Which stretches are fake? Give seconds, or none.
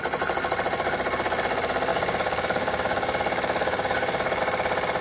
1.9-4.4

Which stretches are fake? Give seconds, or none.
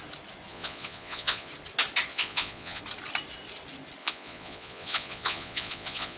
0.5-1.5; 2.1-2.8; 4.0-6.2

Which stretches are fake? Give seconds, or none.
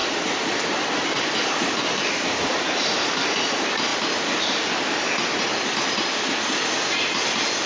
0.0-3.3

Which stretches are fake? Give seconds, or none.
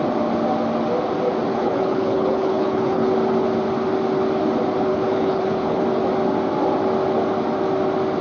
1.5-3.1; 4.9-5.8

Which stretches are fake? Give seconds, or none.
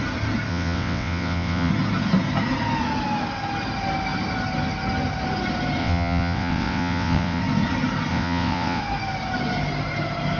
0.5-1.7; 5.8-7.4; 8.1-8.8